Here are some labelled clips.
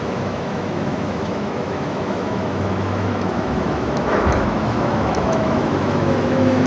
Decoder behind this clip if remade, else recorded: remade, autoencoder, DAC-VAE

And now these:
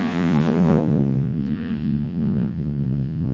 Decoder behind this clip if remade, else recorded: remade, vocoder, Vocos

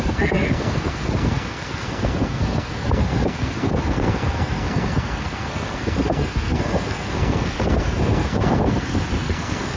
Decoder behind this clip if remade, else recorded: remade, codec, SNAC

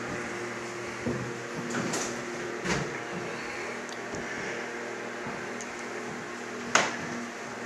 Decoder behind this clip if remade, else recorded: recorded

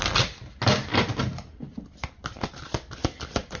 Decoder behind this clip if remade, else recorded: recorded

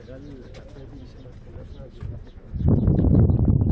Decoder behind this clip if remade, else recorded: recorded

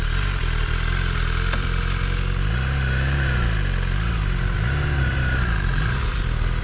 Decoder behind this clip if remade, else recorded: recorded